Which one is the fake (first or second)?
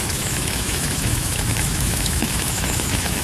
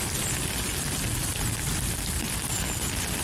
first